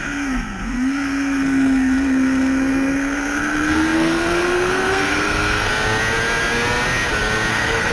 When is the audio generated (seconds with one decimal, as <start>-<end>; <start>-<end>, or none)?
0.0-5.7; 7.5-7.9